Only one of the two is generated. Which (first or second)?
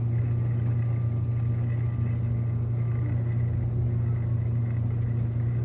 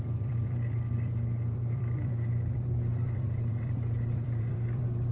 second